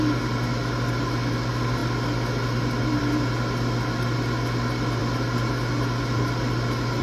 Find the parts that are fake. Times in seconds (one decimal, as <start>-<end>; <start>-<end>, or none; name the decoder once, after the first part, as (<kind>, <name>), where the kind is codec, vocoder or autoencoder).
none